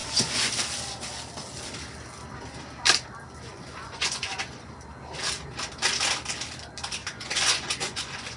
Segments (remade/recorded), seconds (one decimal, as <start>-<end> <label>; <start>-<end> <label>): 0.0-0.5 remade; 0.5-3.5 recorded; 3.5-4.7 remade; 4.7-7.0 recorded; 7.0-8.4 remade